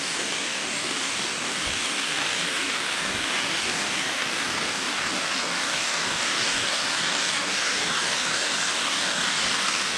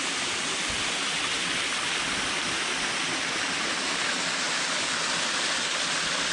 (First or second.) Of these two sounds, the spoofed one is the first